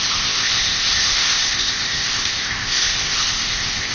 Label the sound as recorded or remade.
remade